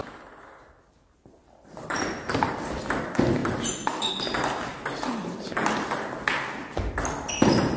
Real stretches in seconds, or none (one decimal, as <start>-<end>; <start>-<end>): 0.0-1.4; 2.5-7.8